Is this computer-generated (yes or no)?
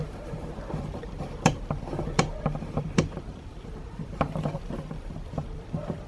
yes